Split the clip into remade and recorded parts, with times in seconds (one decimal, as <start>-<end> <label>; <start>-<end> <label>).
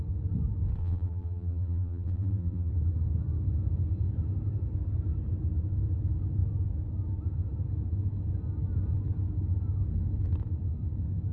0.0-0.8 recorded; 0.8-2.7 remade; 2.7-11.3 recorded